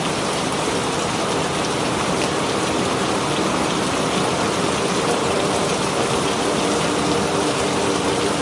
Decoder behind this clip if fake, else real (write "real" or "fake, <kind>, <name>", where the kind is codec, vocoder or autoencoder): fake, vocoder, BigVGAN v2